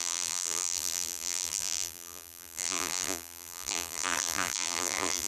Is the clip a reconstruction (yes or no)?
yes